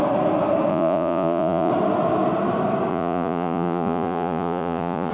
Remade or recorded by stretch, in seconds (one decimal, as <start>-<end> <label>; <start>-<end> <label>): 0.0-0.7 recorded; 0.7-1.7 remade; 1.7-2.9 recorded; 2.9-5.1 remade